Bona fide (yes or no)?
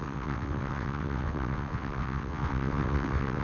no